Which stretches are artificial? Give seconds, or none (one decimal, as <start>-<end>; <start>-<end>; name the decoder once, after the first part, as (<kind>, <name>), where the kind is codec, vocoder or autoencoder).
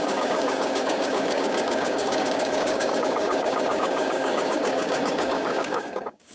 0.0-6.3 (codec, DAC)